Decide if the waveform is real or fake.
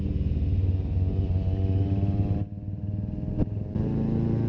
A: real